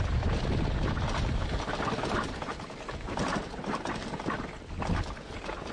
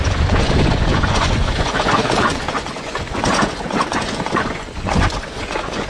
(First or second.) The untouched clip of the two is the first